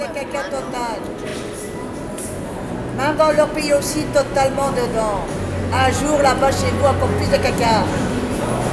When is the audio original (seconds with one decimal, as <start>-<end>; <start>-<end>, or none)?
0.0-8.7